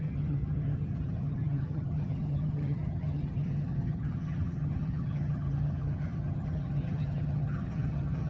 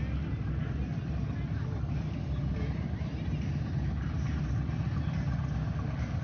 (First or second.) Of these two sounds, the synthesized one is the first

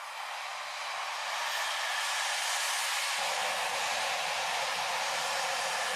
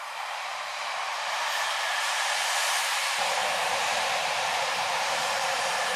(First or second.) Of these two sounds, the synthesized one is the second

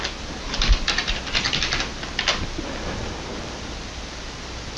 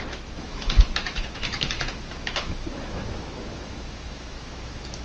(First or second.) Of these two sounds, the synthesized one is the second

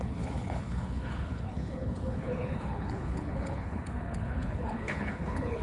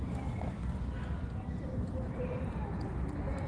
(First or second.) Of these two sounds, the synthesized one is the first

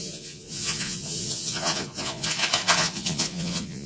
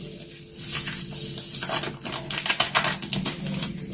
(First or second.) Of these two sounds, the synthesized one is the first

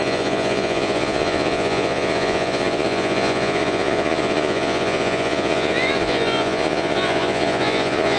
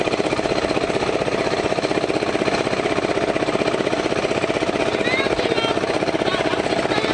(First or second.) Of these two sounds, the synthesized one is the first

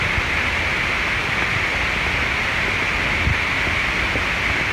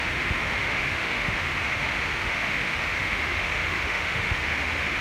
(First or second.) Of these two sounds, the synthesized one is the second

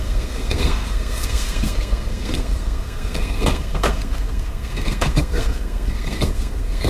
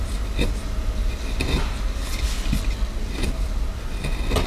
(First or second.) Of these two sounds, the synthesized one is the first